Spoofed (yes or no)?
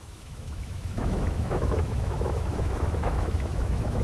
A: yes